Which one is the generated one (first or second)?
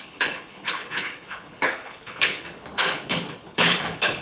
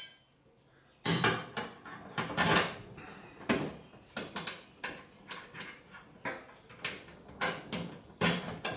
first